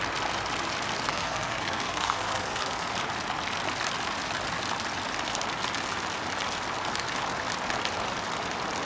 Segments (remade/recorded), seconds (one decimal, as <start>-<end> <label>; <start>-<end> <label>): 0.0-1.1 recorded; 1.1-2.9 remade; 2.9-8.9 recorded